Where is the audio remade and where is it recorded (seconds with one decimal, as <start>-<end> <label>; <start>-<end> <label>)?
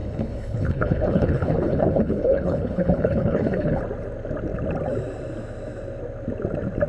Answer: 0.0-3.8 remade; 3.8-6.9 recorded